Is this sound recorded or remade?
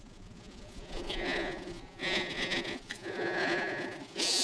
remade